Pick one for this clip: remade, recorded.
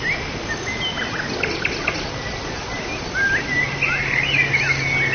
recorded